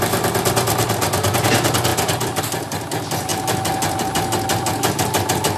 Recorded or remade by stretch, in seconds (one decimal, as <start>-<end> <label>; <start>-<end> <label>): 0.0-5.6 recorded